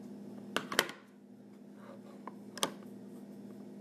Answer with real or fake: real